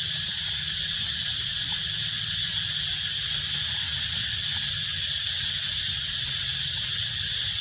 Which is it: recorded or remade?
recorded